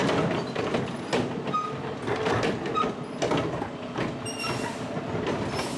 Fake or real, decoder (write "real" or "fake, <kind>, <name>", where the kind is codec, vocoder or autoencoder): real